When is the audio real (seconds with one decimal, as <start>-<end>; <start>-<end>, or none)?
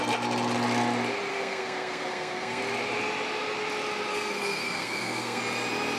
0.0-1.3; 2.6-4.1; 5.4-6.0